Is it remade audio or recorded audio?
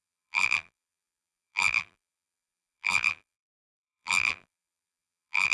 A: remade